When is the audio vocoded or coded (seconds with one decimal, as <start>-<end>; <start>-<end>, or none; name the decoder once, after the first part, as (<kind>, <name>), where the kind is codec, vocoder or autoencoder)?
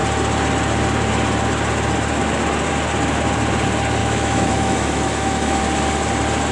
4.0-5.6 (autoencoder, DAC-VAE)